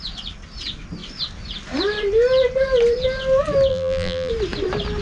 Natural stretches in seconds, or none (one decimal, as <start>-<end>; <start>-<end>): 0.0-3.7; 4.3-5.0